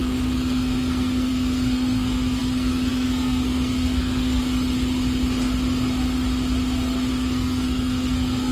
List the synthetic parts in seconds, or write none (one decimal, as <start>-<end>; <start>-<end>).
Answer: 0.0-4.4; 7.1-8.5